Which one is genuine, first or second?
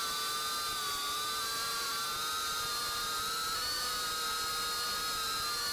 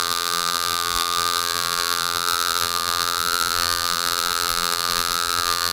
first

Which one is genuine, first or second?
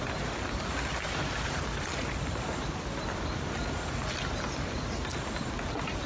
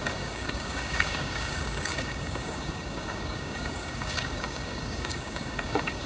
first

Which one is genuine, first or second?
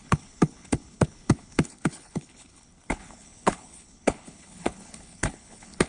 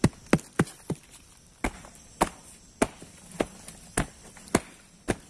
second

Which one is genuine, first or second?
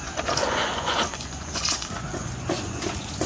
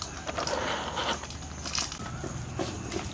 second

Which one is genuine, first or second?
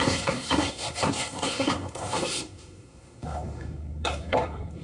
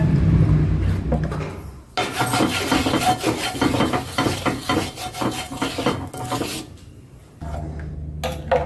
second